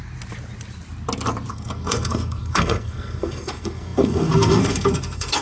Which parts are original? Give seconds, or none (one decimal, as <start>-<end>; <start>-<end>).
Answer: 0.0-1.5